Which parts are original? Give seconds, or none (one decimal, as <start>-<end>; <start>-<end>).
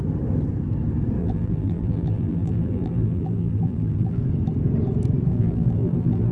0.0-1.2; 4.2-5.3